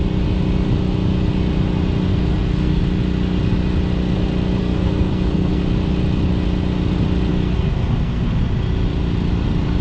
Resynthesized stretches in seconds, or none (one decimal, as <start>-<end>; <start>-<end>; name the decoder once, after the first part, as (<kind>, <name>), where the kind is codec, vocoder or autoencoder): 2.1-2.8 (codec, SNAC); 4.6-5.6; 7.3-8.3